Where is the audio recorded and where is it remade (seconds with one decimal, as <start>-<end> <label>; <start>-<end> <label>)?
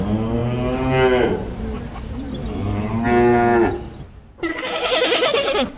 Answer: 0.0-4.5 recorded; 4.5-5.8 remade